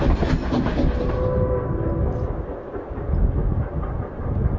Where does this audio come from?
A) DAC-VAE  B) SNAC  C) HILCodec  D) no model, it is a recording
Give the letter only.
D